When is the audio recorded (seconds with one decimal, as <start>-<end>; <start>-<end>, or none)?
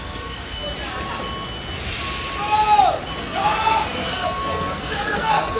0.6-3.2